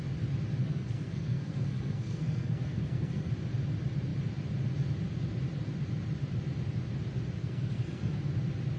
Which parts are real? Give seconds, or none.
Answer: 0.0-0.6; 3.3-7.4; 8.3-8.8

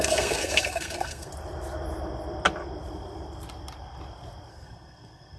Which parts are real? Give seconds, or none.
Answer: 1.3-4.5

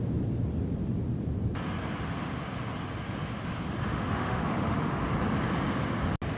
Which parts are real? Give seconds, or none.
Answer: 0.0-3.9; 5.1-6.4

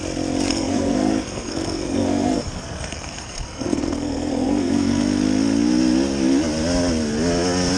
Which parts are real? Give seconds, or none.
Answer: 0.0-0.5; 5.0-7.8